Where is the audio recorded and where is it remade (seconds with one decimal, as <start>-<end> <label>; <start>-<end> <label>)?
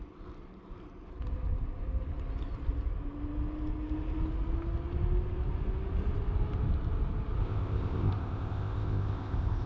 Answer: 0.0-7.4 recorded; 7.4-9.7 remade